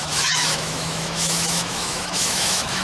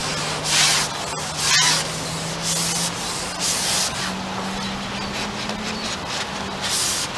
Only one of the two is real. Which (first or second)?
second